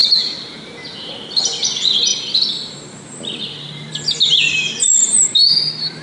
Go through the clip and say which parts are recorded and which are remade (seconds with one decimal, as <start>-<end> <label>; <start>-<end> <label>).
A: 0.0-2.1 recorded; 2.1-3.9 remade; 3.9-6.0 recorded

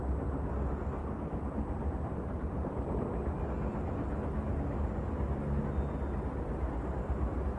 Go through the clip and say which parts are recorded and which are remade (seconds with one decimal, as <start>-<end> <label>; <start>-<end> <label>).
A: 0.0-7.6 recorded

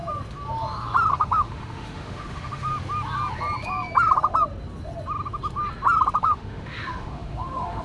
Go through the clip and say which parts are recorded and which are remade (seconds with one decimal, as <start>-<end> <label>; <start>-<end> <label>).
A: 0.0-1.1 recorded; 1.1-2.7 remade; 2.7-6.2 recorded; 6.2-7.8 remade

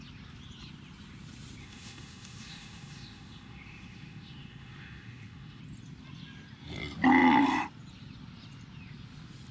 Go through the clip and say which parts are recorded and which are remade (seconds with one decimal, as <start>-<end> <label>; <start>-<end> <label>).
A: 0.0-1.6 recorded; 1.6-5.6 remade; 5.6-9.5 recorded